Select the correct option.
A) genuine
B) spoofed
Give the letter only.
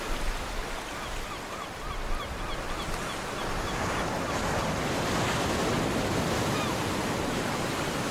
A